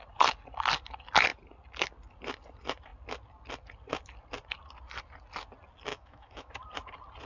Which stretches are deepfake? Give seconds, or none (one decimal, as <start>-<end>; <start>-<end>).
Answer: 5.9-6.5